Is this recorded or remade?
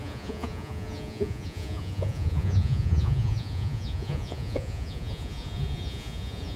remade